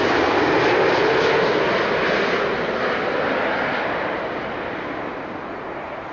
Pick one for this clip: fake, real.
real